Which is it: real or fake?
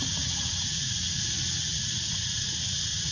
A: fake